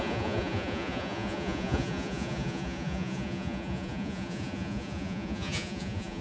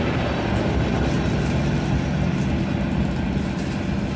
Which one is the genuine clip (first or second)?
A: second